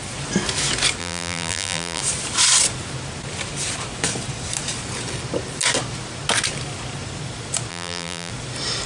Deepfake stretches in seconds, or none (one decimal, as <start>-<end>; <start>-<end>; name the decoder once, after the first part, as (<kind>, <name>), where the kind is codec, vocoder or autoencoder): 1.0-2.0 (vocoder, BigVGAN v2); 7.7-8.3